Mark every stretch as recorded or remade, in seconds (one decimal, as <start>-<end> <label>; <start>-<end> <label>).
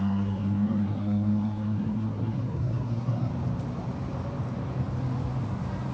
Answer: 0.0-3.3 remade; 3.3-5.9 recorded